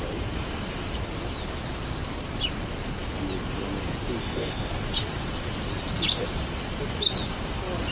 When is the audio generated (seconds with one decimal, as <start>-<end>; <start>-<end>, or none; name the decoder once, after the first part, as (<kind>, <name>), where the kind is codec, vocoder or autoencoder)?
4.2-4.7 (codec, ZipCodec)